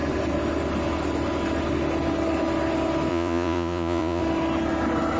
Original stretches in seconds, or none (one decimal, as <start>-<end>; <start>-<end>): 0.0-3.1; 4.2-5.2